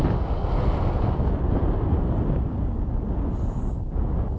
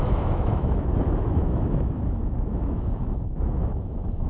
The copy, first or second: second